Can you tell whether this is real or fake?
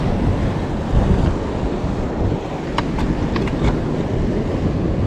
real